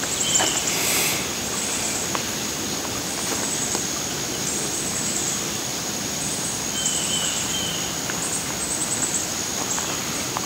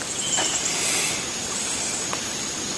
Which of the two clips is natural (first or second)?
first